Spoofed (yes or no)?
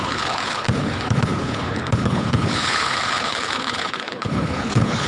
yes